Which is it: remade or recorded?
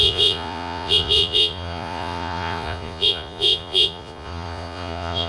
remade